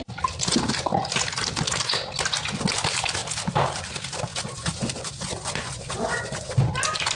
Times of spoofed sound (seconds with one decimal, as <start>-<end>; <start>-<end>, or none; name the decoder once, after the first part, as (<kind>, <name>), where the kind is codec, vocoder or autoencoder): 4.3-6.6 (vocoder, Vocos)